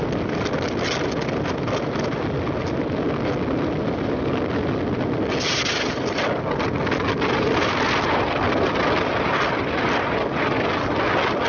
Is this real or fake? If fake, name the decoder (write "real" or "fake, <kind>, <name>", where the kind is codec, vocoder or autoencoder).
real